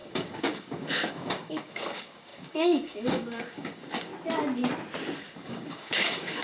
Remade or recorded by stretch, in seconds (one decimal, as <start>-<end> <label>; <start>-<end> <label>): 0.0-4.1 remade; 4.1-5.2 recorded; 5.2-6.4 remade